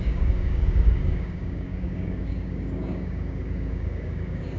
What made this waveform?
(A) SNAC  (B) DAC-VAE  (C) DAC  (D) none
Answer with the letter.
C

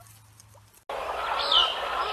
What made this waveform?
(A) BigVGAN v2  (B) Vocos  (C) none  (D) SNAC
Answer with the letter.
C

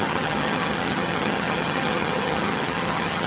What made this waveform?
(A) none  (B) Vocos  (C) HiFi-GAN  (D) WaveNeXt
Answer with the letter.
C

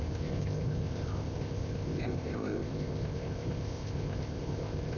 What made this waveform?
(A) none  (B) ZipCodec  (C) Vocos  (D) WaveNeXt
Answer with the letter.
B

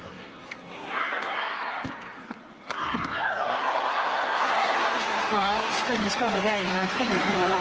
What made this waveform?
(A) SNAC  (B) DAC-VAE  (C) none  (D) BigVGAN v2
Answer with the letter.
A